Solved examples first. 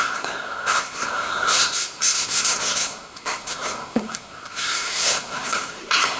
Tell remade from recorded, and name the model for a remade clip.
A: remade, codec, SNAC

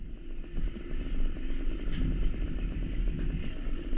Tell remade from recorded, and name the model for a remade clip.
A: recorded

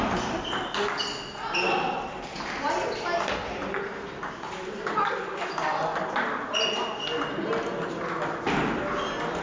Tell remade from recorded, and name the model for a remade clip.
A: recorded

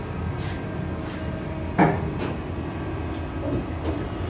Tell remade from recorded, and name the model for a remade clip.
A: recorded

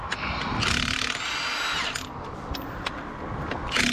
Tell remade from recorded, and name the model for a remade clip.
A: recorded